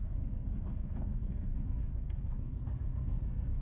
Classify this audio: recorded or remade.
remade